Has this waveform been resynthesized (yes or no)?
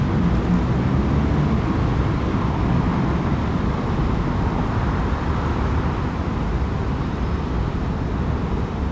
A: no